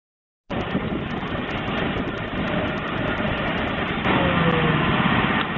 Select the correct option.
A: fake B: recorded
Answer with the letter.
B